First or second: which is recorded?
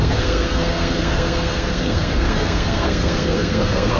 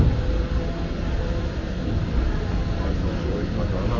second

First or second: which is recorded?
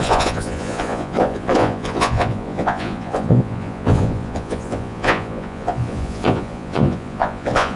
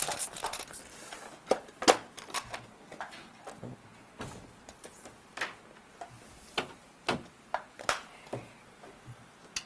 second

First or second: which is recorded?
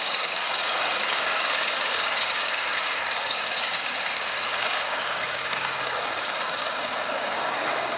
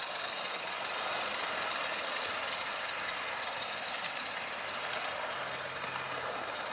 second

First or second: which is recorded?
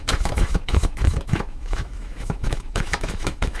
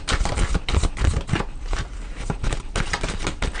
second